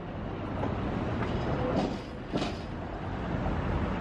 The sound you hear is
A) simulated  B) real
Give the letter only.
B